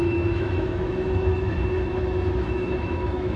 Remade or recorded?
remade